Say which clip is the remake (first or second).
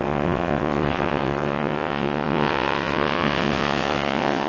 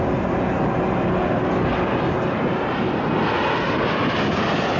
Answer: first